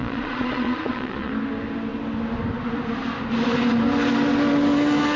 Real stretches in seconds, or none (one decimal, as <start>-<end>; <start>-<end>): 1.3-5.2